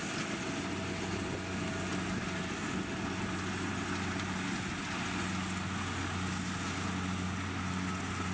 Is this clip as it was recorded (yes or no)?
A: yes